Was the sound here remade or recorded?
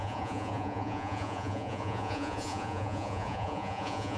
remade